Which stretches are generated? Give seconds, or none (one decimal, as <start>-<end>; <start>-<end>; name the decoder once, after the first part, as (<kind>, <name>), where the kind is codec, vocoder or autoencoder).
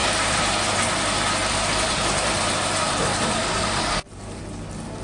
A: 0.0-0.5 (vocoder, BigVGAN v2); 1.4-4.4